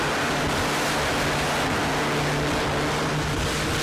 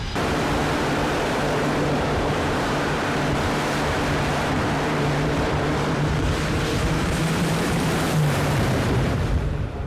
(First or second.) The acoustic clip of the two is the first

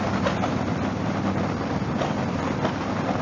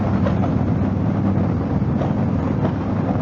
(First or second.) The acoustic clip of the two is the second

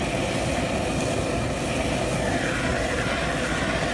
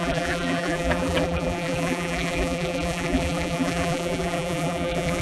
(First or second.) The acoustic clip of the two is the first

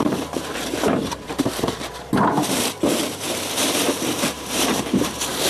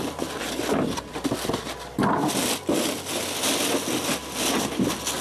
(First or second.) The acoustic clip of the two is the second